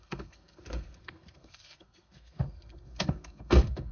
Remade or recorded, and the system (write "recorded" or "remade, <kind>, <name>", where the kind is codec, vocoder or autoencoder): remade, codec, SNAC